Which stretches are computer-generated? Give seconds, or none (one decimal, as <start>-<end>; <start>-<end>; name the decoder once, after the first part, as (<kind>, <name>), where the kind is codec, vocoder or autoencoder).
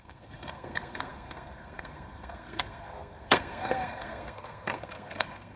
0.0-5.6 (codec, SNAC)